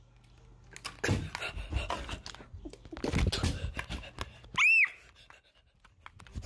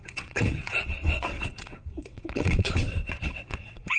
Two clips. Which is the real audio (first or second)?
first